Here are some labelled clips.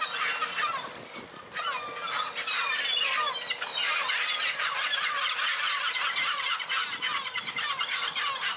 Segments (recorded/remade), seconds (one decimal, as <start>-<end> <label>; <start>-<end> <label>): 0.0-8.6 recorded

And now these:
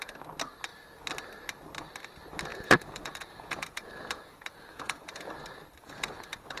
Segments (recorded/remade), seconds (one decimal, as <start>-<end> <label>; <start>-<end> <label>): 0.0-2.5 recorded; 2.5-5.3 remade; 5.3-5.8 recorded; 5.8-6.6 remade

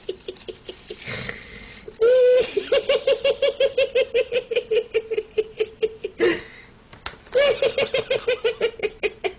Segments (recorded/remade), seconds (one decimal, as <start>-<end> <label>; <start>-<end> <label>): 0.0-9.4 recorded

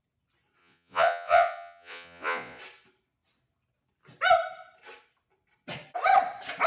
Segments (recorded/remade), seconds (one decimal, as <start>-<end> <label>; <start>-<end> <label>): 0.0-0.6 recorded; 0.6-2.6 remade; 2.6-6.7 recorded